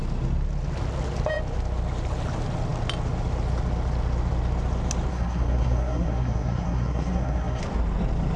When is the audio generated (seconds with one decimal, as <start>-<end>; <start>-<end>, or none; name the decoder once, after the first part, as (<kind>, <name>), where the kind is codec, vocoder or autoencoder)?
5.1-7.6 (codec, SNAC)